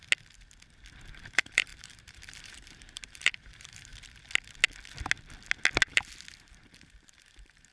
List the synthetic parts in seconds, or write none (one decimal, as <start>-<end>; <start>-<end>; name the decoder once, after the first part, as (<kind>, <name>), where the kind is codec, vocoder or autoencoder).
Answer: 1.1-3.9 (vocoder, BigVGAN v2); 6.4-7.7